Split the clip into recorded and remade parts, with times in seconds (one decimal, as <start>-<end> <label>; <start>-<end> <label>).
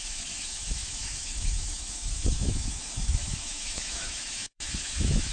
0.0-5.3 remade